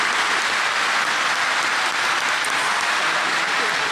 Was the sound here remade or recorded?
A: recorded